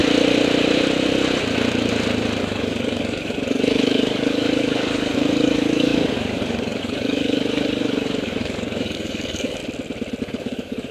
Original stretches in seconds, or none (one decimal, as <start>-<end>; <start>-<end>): 0.0-2.4; 9.6-10.2